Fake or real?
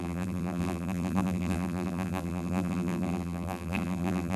fake